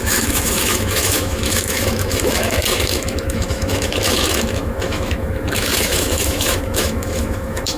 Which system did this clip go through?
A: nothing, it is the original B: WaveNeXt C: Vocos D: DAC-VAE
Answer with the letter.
D